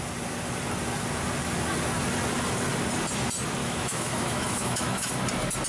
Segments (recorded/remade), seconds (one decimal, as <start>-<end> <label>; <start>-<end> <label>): 0.0-3.6 recorded; 3.6-5.1 remade; 5.1-5.7 recorded